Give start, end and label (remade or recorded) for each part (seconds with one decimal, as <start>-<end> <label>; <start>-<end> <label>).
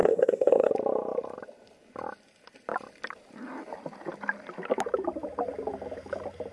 0.0-0.7 remade; 0.7-6.5 recorded